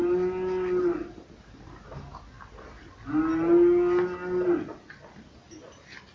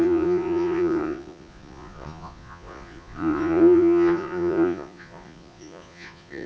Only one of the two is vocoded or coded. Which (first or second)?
second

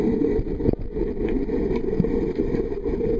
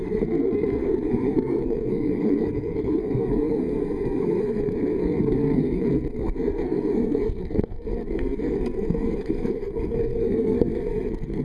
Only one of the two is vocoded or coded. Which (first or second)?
second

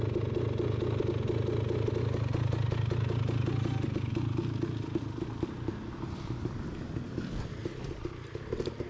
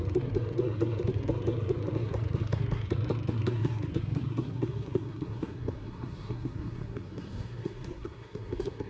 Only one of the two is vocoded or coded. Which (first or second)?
second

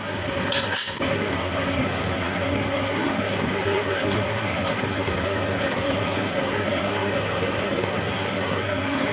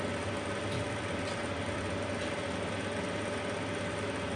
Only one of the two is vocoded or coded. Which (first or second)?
first